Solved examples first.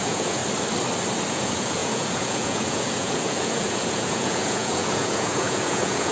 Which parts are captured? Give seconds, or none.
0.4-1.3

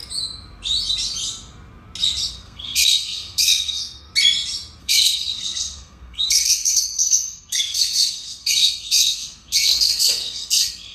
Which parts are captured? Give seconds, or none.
0.0-2.3; 4.1-4.8

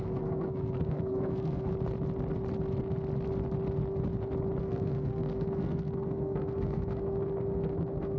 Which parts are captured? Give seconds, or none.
1.7-4.6

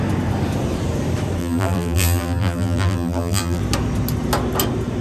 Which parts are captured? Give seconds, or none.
0.0-1.4; 3.6-5.0

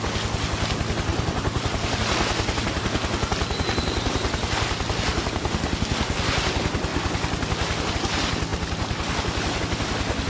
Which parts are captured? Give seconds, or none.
0.0-1.1; 2.0-10.3

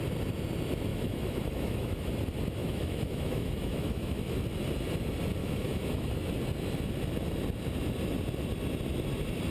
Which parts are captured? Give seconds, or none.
0.0-0.9; 2.1-2.6; 4.2-5.4; 6.1-9.5

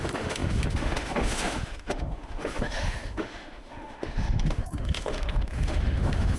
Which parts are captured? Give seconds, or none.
none

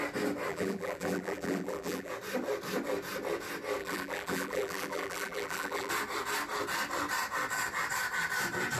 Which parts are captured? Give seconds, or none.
0.0-0.5; 2.1-3.8; 5.9-8.8